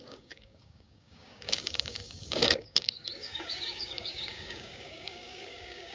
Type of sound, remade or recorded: remade